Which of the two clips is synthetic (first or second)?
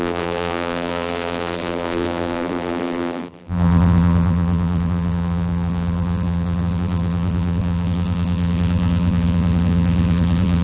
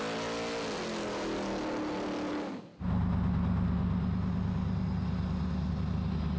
first